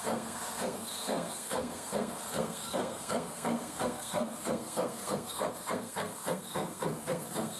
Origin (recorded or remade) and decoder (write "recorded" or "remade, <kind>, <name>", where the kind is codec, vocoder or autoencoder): remade, codec, SNAC